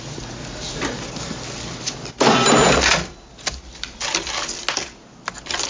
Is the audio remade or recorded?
recorded